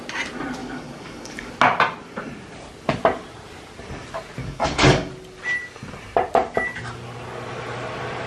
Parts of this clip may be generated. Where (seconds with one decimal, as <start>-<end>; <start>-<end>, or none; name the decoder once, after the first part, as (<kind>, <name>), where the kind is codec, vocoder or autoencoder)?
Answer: 0.6-1.5 (codec, DAC); 4.4-5.1